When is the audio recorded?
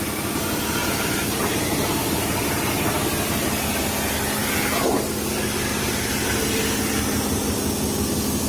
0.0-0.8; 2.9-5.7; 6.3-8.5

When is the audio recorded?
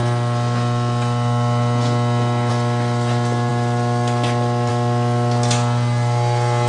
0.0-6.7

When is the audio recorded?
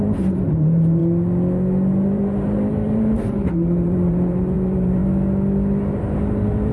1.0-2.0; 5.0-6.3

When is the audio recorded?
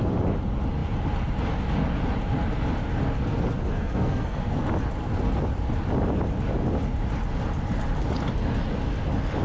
0.0-3.6; 4.6-9.4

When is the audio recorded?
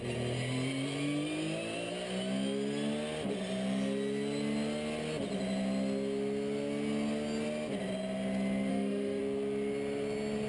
0.0-8.7; 9.2-10.5